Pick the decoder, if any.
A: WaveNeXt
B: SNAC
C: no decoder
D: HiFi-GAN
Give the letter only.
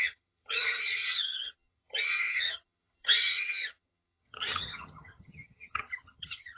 D